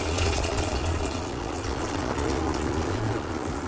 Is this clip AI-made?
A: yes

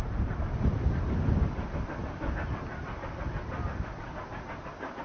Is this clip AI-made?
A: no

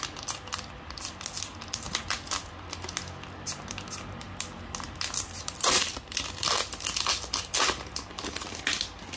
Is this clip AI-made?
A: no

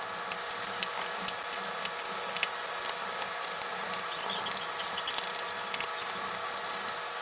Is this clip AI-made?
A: no